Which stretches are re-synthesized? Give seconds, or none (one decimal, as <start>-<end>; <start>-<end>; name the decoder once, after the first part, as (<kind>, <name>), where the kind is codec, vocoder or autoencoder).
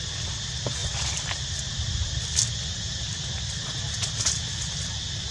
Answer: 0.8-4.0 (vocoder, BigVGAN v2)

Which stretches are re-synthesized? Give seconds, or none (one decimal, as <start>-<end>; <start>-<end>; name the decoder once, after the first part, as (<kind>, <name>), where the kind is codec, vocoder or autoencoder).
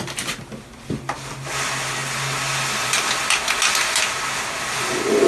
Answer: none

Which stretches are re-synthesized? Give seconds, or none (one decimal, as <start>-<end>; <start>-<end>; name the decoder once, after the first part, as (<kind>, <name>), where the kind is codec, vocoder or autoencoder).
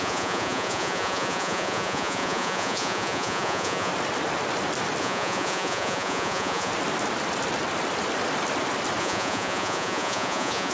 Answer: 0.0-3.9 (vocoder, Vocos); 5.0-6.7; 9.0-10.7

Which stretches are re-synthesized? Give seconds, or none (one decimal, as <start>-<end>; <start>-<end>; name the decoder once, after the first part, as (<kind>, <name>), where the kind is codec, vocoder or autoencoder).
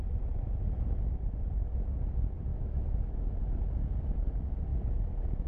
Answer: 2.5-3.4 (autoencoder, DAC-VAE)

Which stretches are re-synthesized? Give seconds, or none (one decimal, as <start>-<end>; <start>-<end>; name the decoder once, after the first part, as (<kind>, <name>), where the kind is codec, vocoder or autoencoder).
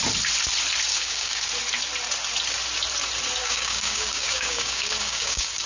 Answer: 0.9-1.5 (codec, DAC); 3.4-5.7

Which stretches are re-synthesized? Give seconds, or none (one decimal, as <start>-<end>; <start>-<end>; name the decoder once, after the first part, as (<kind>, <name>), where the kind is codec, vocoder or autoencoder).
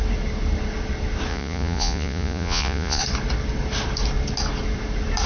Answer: 1.3-3.0 (vocoder, Vocos)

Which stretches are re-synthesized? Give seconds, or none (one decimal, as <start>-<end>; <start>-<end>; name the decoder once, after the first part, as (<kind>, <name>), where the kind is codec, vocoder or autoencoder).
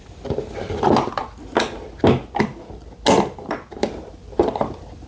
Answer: none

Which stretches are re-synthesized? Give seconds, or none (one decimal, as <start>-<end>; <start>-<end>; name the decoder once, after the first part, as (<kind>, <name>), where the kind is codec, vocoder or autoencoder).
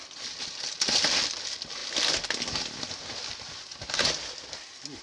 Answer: none